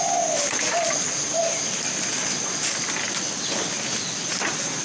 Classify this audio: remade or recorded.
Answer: recorded